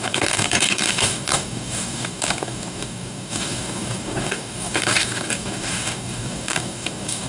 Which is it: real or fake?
fake